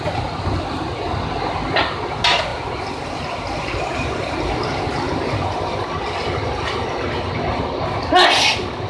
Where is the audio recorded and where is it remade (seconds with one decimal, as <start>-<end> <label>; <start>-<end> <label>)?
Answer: 0.0-8.9 recorded

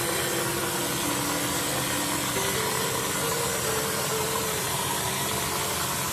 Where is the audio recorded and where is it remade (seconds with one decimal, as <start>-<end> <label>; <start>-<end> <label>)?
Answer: 0.0-3.3 recorded; 3.3-5.2 remade; 5.2-6.1 recorded

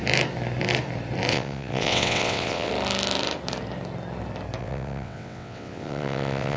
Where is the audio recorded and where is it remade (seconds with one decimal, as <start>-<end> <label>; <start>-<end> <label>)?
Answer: 0.0-1.3 recorded; 1.3-2.7 remade; 2.7-4.6 recorded; 4.6-6.6 remade

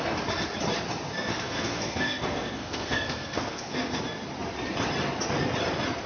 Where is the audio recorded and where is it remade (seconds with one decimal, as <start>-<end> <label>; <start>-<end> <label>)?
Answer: 0.0-1.3 recorded; 1.3-4.0 remade; 4.0-6.1 recorded

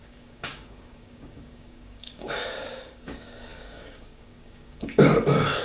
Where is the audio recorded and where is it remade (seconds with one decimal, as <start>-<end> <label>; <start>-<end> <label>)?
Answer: 0.0-5.6 remade

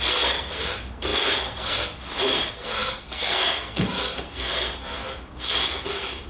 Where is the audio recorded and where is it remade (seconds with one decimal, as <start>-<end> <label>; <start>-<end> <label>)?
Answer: 0.0-6.3 remade

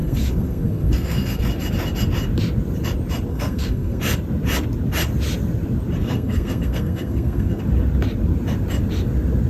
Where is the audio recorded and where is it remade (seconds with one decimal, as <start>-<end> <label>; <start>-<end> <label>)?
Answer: 0.0-1.4 remade; 1.4-3.3 recorded; 3.3-4.0 remade; 4.0-6.0 recorded; 6.0-7.6 remade; 7.6-9.5 recorded

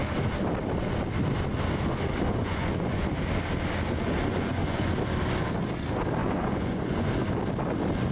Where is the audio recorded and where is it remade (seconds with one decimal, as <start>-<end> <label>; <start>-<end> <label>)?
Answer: 0.0-2.4 recorded; 2.4-3.1 remade; 3.1-4.3 recorded; 4.3-4.9 remade; 4.9-6.2 recorded; 6.2-7.1 remade; 7.1-8.1 recorded